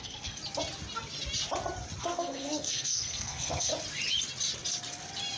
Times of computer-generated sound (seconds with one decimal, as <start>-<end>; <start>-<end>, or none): 0.0-0.4; 2.0-3.7